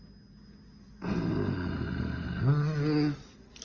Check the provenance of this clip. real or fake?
real